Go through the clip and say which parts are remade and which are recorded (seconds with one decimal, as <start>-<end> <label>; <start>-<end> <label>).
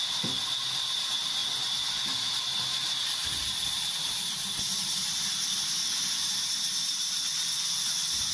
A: 0.0-8.3 recorded